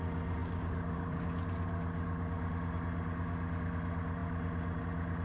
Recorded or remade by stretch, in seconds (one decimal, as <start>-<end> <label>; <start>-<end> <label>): 0.0-5.2 recorded